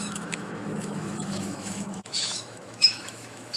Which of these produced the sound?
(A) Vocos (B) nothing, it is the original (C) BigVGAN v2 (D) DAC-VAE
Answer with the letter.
D